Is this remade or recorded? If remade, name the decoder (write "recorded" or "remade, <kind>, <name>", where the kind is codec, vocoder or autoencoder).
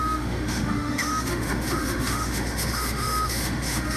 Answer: remade, autoencoder, DAC-VAE